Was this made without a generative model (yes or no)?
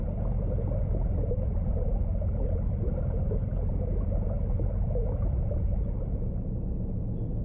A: yes